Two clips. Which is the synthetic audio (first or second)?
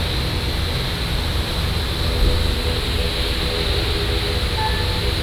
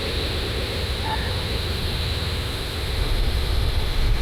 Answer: second